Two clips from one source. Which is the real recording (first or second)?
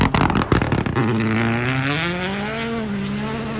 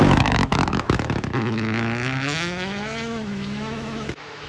first